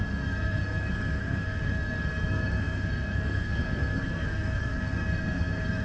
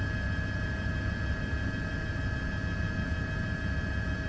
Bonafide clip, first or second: second